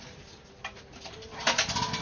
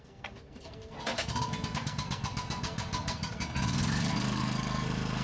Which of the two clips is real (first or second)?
first